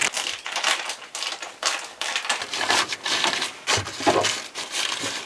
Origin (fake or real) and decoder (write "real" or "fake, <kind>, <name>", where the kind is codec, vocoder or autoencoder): real